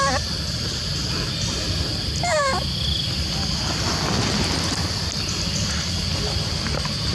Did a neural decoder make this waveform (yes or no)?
yes